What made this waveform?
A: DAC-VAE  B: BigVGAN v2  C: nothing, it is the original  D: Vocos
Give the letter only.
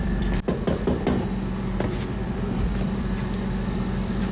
B